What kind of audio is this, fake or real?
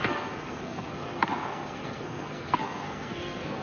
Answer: fake